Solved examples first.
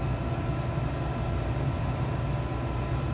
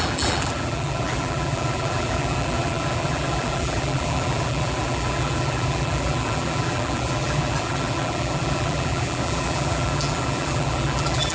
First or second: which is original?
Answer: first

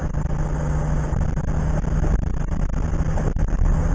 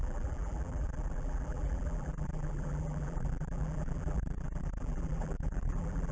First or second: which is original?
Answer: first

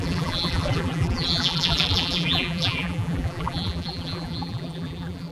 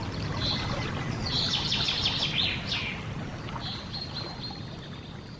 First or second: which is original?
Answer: second